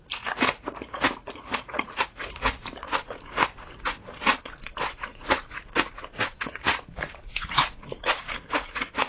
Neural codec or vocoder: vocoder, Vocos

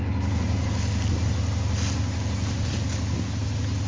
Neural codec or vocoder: none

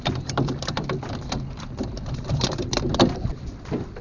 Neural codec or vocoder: none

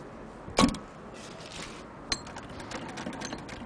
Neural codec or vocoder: none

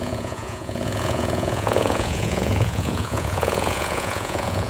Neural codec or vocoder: vocoder, Vocos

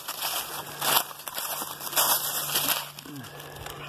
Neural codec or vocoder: none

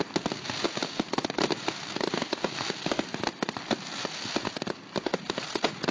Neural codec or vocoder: none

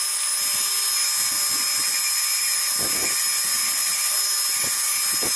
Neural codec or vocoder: none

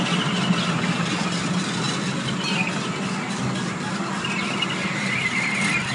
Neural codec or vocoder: none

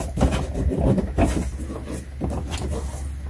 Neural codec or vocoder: none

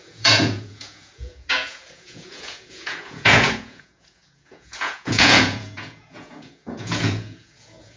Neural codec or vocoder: vocoder, Vocos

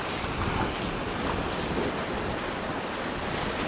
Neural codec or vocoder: none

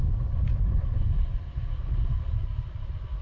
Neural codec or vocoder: none